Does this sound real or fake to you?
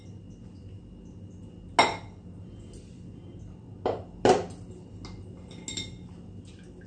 real